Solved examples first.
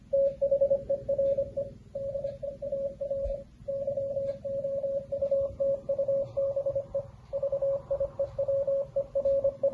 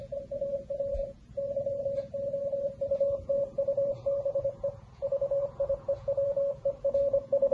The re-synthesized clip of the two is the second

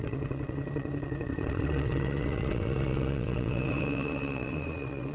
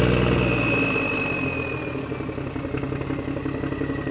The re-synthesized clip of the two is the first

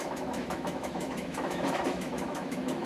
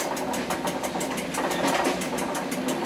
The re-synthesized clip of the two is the first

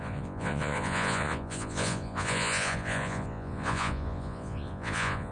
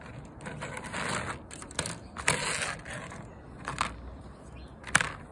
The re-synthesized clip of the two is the first